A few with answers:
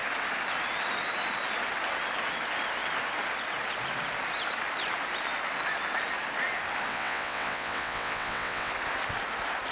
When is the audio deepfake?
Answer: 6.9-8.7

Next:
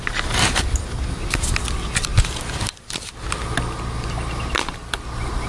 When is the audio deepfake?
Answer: none

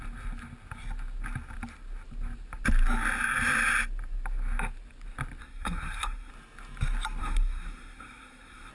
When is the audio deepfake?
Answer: 5.4-6.3; 7.2-8.7